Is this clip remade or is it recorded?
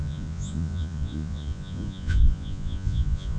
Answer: remade